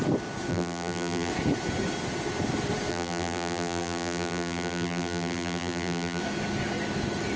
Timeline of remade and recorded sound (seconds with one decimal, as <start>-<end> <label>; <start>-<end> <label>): 0.0-0.5 recorded; 0.5-1.3 remade; 1.3-2.9 recorded; 2.9-6.2 remade; 6.2-7.4 recorded